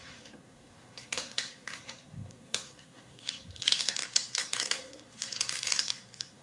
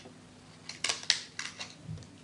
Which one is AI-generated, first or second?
first